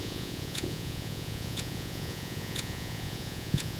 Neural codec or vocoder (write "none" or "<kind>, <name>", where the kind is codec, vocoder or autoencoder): vocoder, Vocos